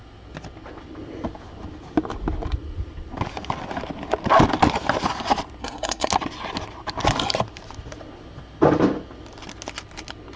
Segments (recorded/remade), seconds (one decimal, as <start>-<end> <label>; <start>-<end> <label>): 0.0-5.6 recorded; 5.6-6.1 remade; 6.1-10.4 recorded